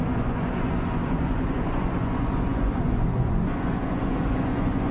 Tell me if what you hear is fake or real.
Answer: fake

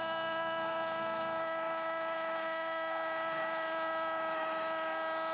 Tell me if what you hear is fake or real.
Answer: fake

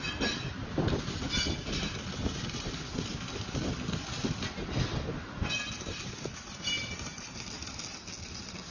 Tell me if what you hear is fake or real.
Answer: real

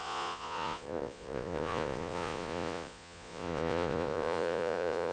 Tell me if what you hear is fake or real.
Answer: fake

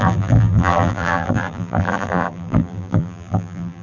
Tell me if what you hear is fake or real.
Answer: fake